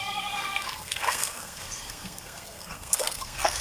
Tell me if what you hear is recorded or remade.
remade